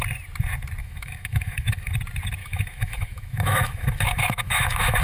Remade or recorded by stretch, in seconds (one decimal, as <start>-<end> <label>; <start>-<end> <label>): 0.0-0.8 recorded; 0.8-1.9 remade; 1.9-2.4 recorded; 2.4-5.0 remade